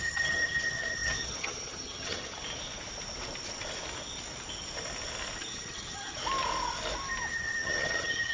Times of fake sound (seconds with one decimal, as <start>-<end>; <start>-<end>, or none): 0.0-2.4; 5.4-6.2; 7.3-8.3